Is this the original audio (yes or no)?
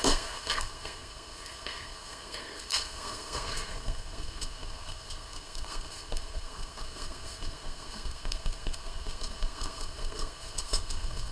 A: no